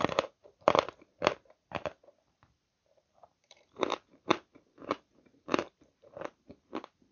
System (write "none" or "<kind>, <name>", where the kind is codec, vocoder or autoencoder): vocoder, BigVGAN v2